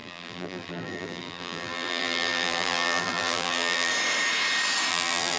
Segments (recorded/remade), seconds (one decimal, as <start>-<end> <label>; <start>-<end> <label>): 0.0-3.9 remade; 3.9-4.9 recorded; 4.9-5.4 remade

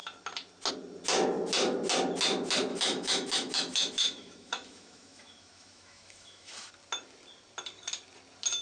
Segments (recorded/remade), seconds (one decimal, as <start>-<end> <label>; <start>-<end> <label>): 0.0-2.7 recorded; 2.7-6.7 remade; 6.7-8.6 recorded

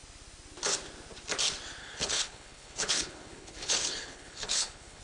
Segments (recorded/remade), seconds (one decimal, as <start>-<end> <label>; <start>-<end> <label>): 0.0-1.8 recorded; 1.8-5.0 remade

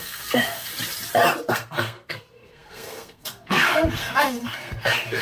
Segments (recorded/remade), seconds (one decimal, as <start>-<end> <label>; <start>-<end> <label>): 0.0-0.7 remade; 0.7-1.5 recorded; 1.5-5.2 remade

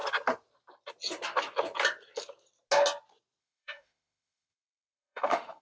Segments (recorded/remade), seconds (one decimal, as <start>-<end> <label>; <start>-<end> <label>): 0.0-3.4 recorded; 3.4-5.6 remade

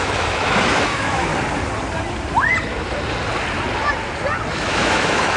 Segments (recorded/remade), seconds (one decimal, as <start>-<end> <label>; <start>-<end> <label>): 0.0-1.3 remade; 1.3-4.5 recorded; 4.5-5.4 remade

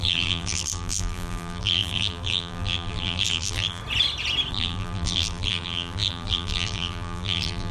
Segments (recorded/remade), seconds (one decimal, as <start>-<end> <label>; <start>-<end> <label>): 0.0-3.8 remade; 3.8-4.5 recorded; 4.5-7.7 remade

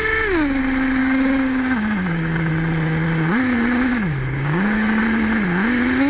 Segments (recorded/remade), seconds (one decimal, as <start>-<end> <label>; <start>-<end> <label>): 0.0-1.0 recorded; 1.0-2.5 remade; 2.5-3.9 recorded; 3.9-5.0 remade; 5.0-6.1 recorded